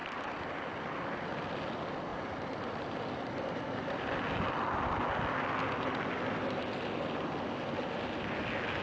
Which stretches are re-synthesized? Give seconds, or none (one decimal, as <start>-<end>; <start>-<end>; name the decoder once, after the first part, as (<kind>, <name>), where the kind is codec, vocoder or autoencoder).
2.1-2.9 (vocoder, BigVGAN v2)